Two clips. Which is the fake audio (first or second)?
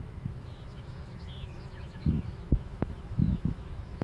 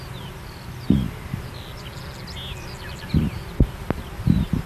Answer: first